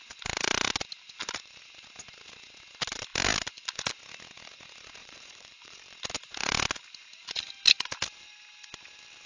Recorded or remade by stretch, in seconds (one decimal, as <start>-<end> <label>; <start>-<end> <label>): 0.0-5.0 recorded; 5.0-5.8 remade; 5.8-9.3 recorded